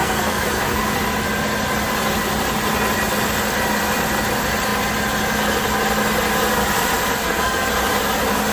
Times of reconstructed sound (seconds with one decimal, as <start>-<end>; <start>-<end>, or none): 0.0-0.8; 7.2-7.7